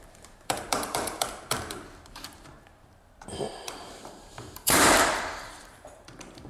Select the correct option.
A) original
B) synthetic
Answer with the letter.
B